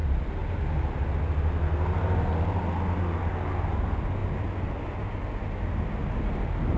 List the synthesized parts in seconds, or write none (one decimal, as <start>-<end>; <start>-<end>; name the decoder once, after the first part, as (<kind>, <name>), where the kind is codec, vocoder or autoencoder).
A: none